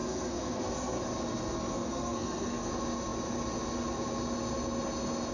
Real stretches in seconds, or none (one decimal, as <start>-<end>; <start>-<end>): 1.0-1.7; 2.7-5.3